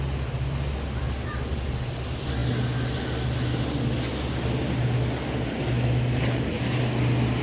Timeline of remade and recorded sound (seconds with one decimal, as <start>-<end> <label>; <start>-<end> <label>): 0.0-7.4 recorded